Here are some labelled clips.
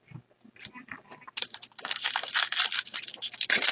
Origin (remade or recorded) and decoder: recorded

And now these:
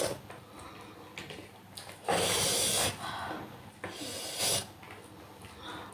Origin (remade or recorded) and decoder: recorded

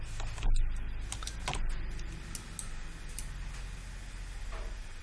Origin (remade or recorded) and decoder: recorded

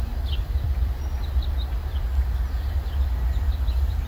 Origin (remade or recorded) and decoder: recorded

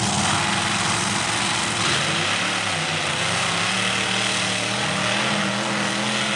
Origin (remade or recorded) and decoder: recorded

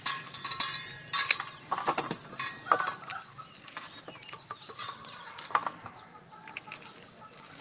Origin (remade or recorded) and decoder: recorded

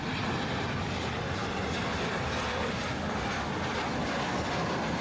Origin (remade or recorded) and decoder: recorded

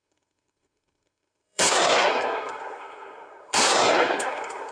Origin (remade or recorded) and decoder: remade, codec, SNAC